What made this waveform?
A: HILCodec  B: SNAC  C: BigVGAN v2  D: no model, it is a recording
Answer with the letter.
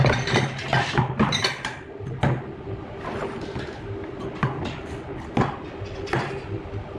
D